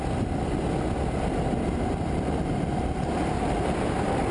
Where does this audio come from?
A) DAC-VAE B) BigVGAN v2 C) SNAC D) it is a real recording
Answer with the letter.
D